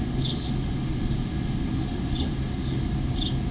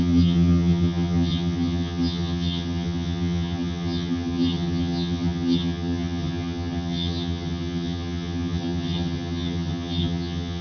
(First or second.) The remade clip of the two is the second